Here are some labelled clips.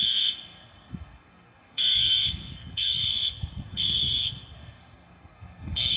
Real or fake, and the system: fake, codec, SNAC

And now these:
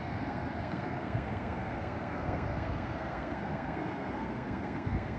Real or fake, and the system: fake, codec, SNAC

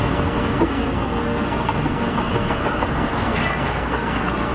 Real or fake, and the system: fake, codec, SNAC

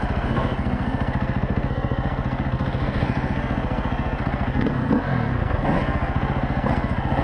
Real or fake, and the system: fake, codec, SNAC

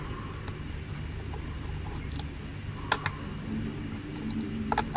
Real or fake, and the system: real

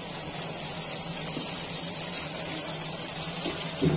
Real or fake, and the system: real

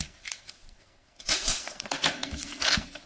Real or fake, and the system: fake, codec, SNAC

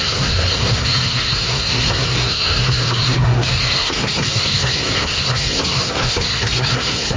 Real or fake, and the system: fake, codec, SNAC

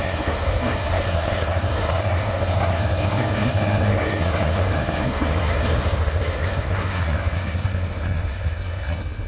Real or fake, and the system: fake, codec, SNAC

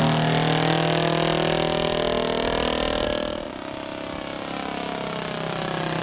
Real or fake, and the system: real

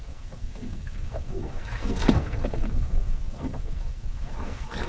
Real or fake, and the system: fake, codec, SNAC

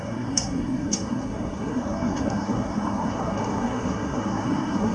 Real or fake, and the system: fake, codec, SNAC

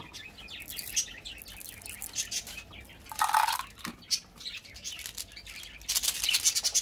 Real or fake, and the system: real